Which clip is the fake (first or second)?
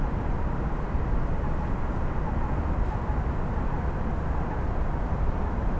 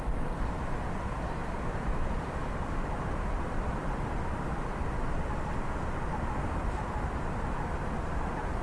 second